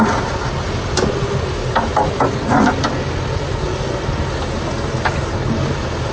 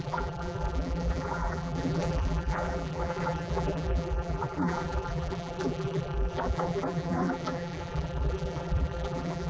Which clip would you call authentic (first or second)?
first